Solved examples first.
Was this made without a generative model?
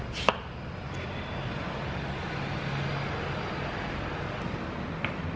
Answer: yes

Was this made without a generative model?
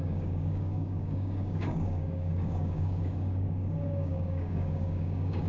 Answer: no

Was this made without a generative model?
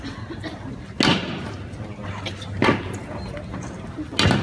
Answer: yes